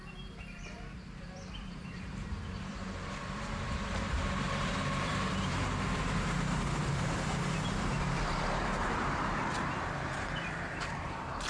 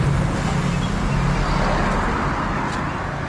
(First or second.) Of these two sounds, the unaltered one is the second